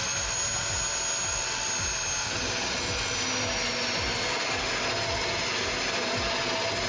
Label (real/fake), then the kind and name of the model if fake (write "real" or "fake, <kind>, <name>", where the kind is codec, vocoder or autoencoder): real